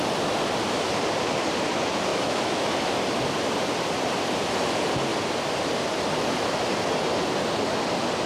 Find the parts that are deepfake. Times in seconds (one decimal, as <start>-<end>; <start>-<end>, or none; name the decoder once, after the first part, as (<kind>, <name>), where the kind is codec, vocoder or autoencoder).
2.1-2.8 (autoencoder, DAC-VAE)